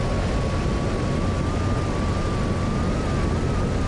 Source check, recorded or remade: recorded